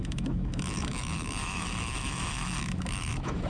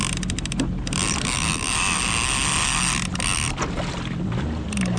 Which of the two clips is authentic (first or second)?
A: second